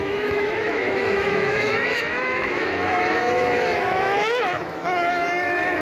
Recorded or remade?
remade